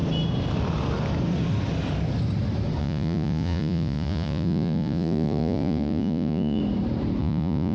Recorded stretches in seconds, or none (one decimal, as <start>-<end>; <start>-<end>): 0.0-2.8; 6.6-7.2